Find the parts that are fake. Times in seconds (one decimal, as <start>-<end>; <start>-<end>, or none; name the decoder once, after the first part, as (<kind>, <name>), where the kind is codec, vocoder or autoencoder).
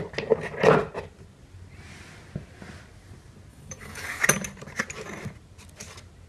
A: 3.5-4.2 (codec, DAC)